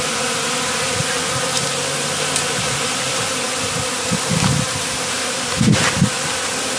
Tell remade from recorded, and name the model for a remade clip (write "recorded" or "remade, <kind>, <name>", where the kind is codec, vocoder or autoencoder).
recorded